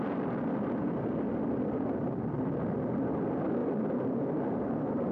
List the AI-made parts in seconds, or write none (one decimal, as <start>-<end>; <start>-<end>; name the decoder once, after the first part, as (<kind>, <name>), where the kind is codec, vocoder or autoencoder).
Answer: none